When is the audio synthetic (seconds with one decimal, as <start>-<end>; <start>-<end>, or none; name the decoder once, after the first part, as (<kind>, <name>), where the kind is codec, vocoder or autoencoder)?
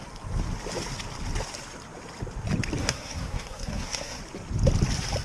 2.8-4.2 (codec, SNAC)